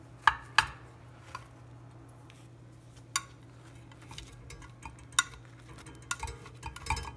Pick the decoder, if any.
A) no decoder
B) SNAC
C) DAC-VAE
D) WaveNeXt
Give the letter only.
A